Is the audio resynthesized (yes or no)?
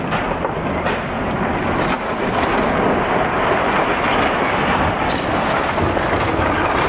no